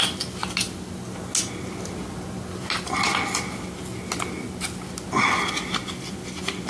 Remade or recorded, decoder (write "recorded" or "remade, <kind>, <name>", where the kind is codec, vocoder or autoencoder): recorded